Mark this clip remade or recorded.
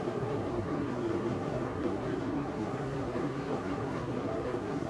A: remade